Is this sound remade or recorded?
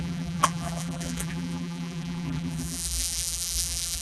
remade